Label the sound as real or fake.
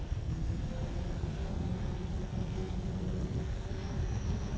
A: fake